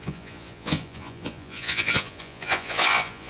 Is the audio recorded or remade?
remade